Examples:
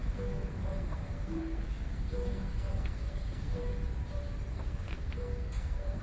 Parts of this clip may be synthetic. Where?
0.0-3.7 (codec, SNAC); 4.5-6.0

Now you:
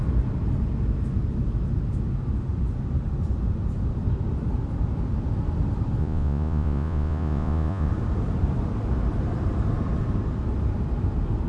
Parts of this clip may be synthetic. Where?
6.0-7.9 (vocoder, Vocos)

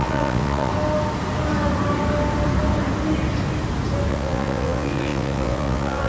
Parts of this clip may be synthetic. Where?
0.0-0.7 (vocoder, WaveNeXt); 4.1-6.1

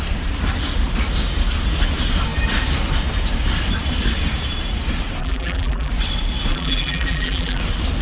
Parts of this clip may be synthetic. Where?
5.2-5.9 (vocoder, BigVGAN v2); 6.5-7.6

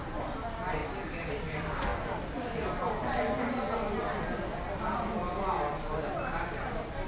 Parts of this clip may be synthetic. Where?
none

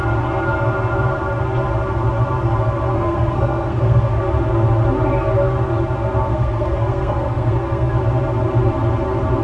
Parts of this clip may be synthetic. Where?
2.9-4.2 (codec, SNAC); 6.3-7.9

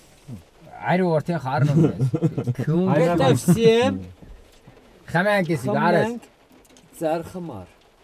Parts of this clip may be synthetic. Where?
1.8-3.0 (vocoder, Vocos); 4.0-5.5

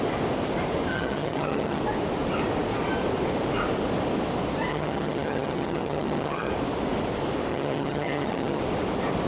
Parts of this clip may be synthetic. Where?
0.9-1.8 (vocoder, HiFi-GAN); 4.7-6.5; 7.5-8.6